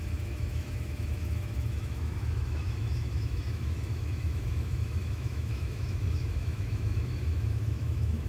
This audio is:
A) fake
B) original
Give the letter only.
A